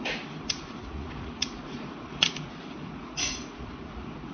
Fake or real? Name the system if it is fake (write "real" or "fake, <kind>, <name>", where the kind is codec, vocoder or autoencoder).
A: fake, vocoder, Vocos